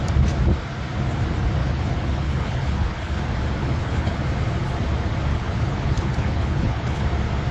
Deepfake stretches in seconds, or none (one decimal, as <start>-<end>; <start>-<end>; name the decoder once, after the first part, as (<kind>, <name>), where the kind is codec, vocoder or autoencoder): 1.6-3.2 (codec, HILCodec); 3.6-4.2; 5.3-7.0